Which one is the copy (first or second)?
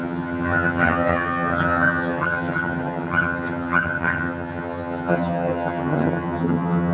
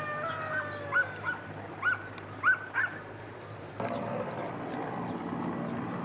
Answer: first